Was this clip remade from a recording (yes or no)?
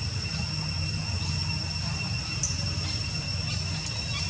no